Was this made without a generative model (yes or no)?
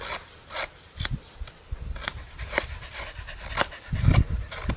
yes